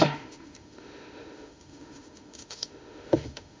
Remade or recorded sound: remade